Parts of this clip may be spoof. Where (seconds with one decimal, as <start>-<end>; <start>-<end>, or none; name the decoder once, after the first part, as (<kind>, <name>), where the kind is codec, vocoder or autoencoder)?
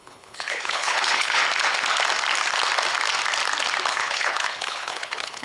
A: 0.0-1.4 (codec, HILCodec); 3.9-5.4